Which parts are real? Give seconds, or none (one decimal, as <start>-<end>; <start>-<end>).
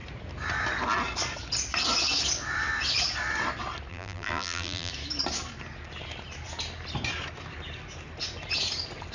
0.0-3.9; 4.9-9.1